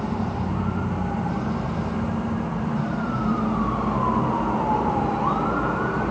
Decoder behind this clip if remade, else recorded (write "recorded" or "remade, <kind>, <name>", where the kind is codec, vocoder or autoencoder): recorded